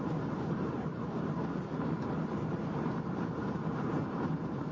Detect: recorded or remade remade